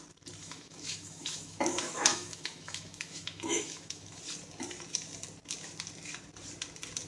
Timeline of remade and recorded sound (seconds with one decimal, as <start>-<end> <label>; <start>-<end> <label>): 0.0-0.4 recorded; 0.4-4.2 remade; 4.2-7.1 recorded